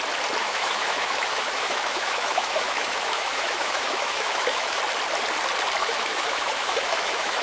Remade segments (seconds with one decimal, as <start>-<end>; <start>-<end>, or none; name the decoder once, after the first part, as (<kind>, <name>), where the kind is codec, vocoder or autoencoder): 0.4-4.8 (autoencoder, DAC-VAE); 5.8-7.4